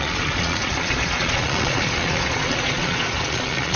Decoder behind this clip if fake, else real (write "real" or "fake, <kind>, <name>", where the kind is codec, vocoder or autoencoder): fake, vocoder, Vocos